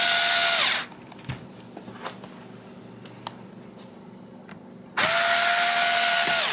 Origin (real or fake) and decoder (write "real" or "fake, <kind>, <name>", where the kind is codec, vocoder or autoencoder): real